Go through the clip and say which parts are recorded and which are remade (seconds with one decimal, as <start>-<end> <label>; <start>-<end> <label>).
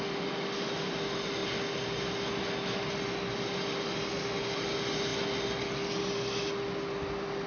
0.0-7.5 recorded